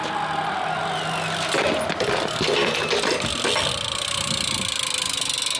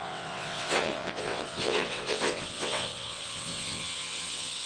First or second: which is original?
first